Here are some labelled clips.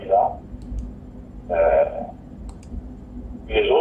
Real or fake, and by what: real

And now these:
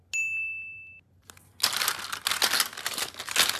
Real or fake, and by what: real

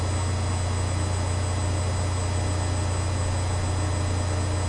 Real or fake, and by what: real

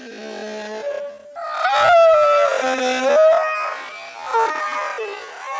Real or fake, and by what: real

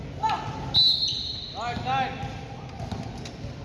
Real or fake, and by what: real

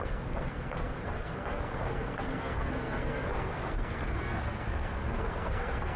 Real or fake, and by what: fake, codec, SNAC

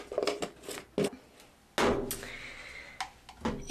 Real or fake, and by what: real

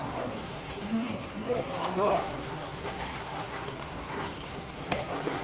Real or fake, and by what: fake, codec, SNAC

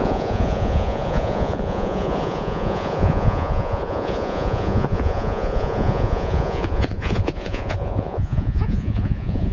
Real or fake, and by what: fake, vocoder, Vocos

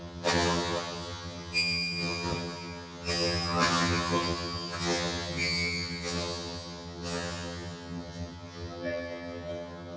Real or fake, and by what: fake, vocoder, HiFi-GAN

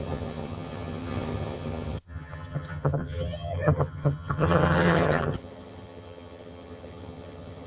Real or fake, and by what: fake, vocoder, HiFi-GAN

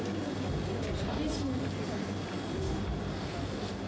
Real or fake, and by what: real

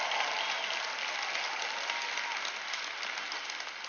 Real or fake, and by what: real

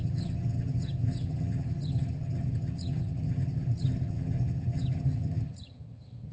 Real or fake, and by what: fake, vocoder, HiFi-GAN